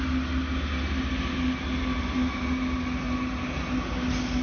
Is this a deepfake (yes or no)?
no